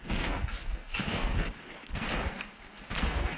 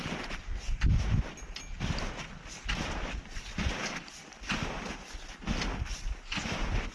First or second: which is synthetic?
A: first